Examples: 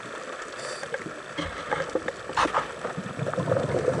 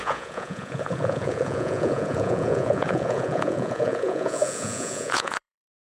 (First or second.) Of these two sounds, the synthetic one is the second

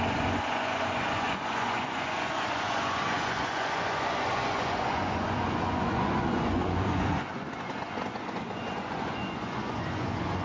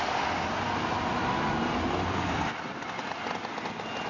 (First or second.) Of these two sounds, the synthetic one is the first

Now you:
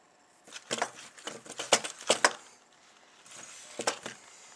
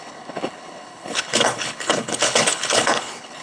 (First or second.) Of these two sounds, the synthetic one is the second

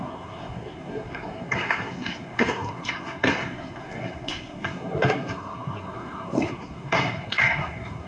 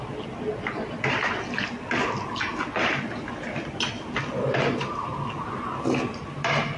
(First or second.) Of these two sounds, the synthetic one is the first